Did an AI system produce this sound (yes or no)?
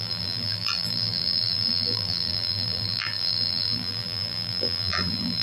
yes